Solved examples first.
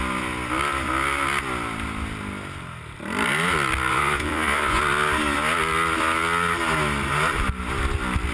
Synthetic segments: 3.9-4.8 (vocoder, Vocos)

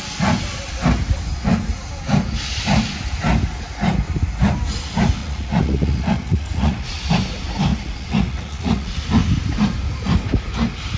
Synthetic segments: 5.2-7.1 (vocoder, Vocos); 7.7-9.1